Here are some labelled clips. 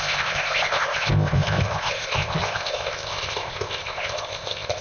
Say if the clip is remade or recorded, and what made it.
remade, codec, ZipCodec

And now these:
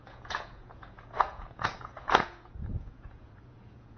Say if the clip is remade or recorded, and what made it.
remade, vocoder, Vocos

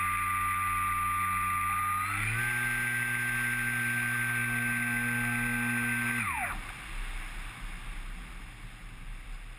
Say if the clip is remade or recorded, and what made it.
recorded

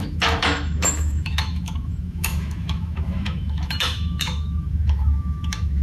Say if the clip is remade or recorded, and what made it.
remade, autoencoder, DAC-VAE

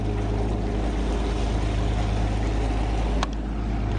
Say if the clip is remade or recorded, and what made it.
recorded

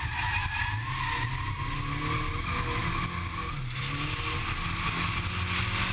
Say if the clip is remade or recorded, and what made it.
recorded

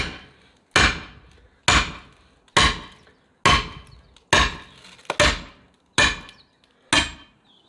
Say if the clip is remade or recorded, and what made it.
recorded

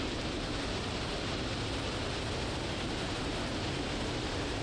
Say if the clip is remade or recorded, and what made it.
remade, vocoder, BigVGAN v2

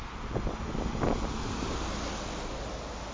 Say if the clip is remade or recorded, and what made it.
recorded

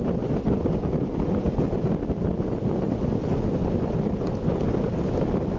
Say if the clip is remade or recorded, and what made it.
recorded